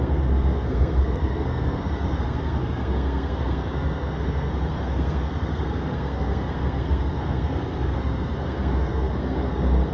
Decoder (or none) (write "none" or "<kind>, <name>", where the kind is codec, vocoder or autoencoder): codec, SNAC